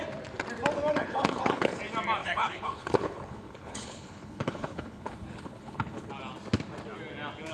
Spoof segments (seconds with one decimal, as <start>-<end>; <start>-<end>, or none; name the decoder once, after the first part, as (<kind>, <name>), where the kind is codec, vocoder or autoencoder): 0.9-1.8 (codec, HILCodec); 2.2-6.1